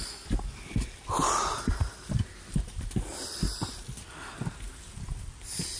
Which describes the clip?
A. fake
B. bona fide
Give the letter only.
B